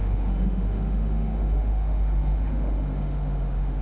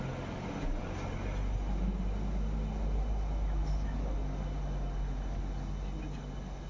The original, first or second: second